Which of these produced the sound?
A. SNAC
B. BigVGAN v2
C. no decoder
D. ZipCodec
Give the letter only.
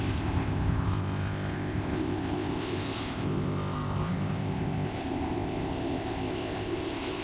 D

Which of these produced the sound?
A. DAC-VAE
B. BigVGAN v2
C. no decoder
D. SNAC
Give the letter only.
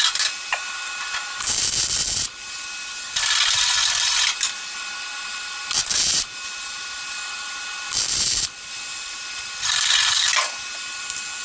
B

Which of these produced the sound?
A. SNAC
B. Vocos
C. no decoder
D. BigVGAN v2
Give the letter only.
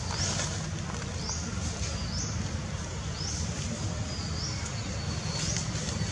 C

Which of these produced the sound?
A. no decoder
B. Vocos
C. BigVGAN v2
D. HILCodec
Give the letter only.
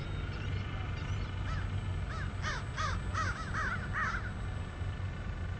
A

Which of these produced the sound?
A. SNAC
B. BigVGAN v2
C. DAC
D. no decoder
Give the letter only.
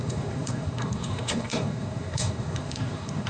A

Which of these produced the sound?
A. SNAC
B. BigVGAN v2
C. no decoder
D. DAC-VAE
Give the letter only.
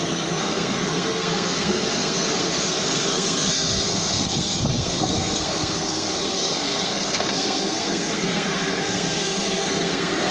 A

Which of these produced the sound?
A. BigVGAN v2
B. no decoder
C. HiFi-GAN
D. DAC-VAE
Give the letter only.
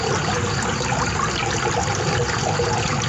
B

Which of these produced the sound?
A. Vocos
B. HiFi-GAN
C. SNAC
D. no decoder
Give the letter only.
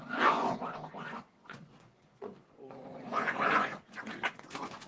A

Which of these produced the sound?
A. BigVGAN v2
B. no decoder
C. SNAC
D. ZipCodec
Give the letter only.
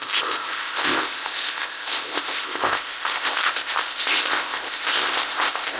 D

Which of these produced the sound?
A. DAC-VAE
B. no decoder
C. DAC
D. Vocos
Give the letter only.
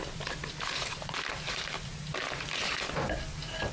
B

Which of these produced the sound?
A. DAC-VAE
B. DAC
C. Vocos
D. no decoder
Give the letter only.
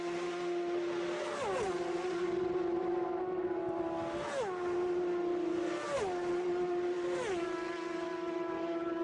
D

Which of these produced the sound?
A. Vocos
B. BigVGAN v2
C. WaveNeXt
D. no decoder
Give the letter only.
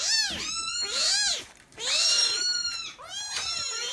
D